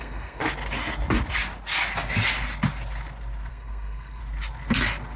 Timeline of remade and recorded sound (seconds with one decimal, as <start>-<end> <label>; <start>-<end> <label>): 0.0-0.4 remade; 0.4-3.5 recorded; 3.5-4.2 remade; 4.2-5.2 recorded